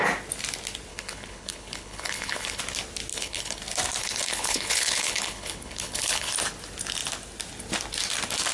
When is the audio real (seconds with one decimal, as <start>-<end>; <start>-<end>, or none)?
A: 0.0-0.9; 2.6-3.1; 3.6-4.0; 6.3-8.5